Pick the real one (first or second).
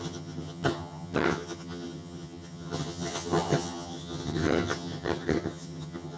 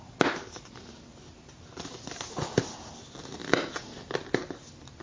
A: second